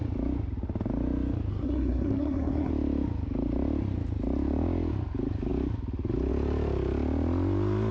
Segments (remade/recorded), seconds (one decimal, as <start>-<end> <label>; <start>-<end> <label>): 0.0-1.5 recorded; 1.5-2.7 remade; 2.7-7.9 recorded